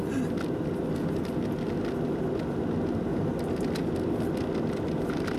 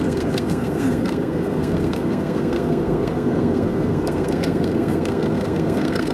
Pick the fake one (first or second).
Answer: second